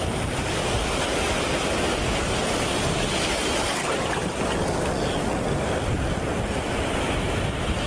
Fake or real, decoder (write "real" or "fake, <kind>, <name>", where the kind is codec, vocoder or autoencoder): real